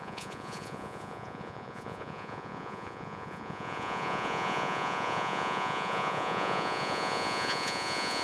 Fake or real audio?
fake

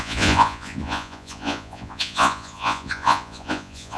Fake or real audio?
fake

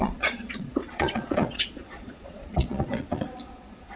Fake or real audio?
fake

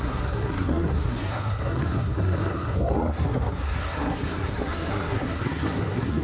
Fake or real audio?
fake